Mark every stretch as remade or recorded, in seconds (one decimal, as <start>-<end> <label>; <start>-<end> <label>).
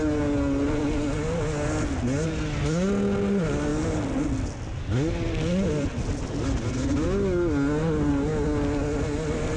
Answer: 0.0-9.6 recorded